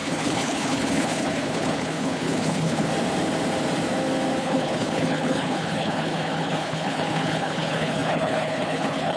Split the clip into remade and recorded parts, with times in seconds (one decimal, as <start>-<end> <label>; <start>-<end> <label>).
0.0-2.9 remade; 2.9-4.4 recorded; 4.4-9.2 remade